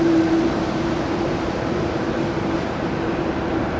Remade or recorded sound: remade